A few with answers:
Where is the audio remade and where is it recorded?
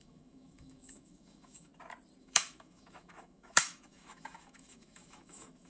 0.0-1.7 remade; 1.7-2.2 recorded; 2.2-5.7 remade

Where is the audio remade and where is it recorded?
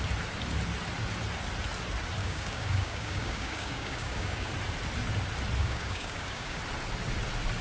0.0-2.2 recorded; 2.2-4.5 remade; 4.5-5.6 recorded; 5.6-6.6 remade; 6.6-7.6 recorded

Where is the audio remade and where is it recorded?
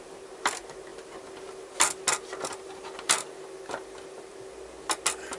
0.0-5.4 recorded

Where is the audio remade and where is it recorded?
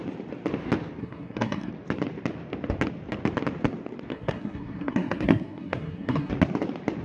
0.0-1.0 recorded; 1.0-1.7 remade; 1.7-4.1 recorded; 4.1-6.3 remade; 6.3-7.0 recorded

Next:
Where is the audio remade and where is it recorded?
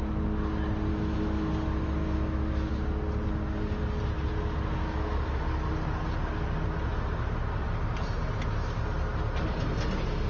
0.0-0.9 recorded; 0.9-1.5 remade; 1.5-2.0 recorded; 2.0-2.7 remade; 2.7-4.8 recorded; 4.8-5.4 remade; 5.4-10.3 recorded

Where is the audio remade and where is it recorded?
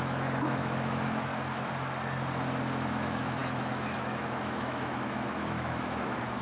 0.0-1.3 remade; 1.3-2.9 recorded; 2.9-6.4 remade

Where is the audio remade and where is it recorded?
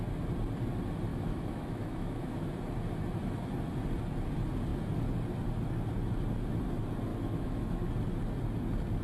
0.0-1.1 recorded; 1.1-2.5 remade; 2.5-7.1 recorded; 7.1-7.9 remade; 7.9-9.0 recorded